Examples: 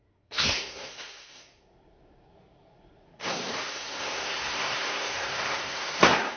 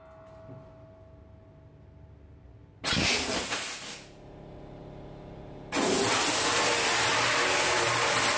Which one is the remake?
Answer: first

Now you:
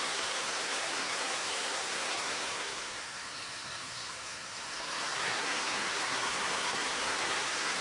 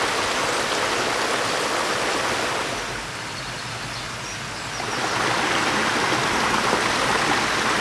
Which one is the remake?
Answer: first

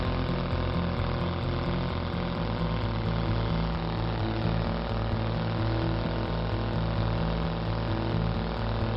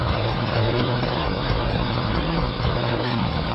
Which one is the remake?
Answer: second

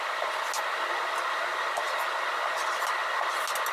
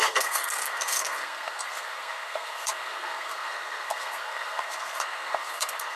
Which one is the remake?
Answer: second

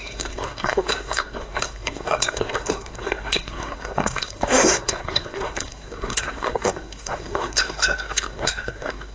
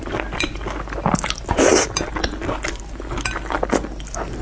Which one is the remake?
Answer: first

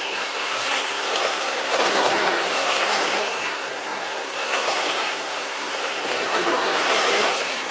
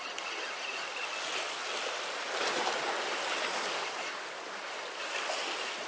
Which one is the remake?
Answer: first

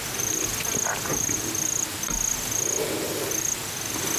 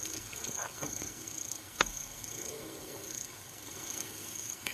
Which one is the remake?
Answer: second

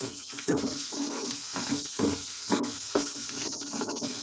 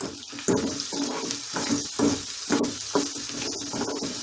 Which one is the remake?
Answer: first